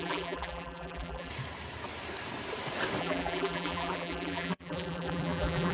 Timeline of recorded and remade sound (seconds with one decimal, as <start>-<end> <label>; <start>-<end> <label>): 0.0-1.3 remade; 1.3-3.0 recorded; 3.0-5.7 remade